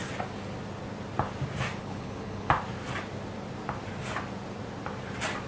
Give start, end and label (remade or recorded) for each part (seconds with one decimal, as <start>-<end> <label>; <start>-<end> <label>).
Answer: 0.0-1.8 recorded; 1.8-2.5 remade; 2.5-5.5 recorded